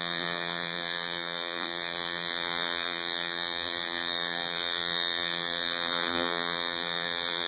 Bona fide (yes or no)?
no